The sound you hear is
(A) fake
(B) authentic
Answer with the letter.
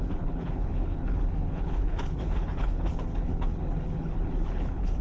A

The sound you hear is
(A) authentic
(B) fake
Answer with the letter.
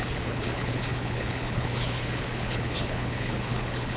B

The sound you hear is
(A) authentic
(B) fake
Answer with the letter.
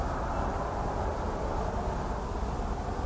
A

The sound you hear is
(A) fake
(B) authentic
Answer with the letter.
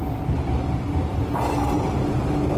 B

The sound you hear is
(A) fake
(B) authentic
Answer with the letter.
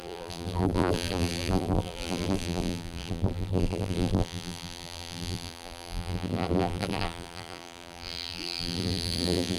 A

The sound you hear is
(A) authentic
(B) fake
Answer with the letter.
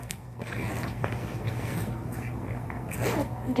B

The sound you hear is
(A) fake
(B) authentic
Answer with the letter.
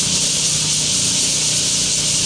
B